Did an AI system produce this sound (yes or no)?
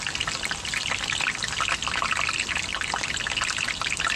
no